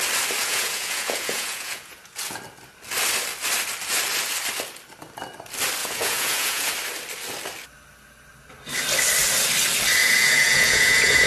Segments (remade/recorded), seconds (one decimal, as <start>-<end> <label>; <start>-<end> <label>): 0.0-0.4 recorded; 0.4-2.4 remade; 2.4-5.8 recorded; 5.8-6.7 remade; 6.7-10.0 recorded; 10.0-11.3 remade